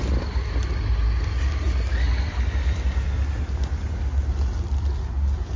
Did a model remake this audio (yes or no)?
no